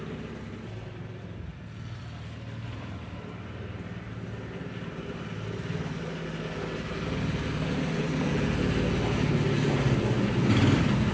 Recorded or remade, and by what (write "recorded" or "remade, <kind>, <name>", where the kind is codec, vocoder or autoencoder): recorded